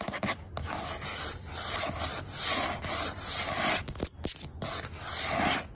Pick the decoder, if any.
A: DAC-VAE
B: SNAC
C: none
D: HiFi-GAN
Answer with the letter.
C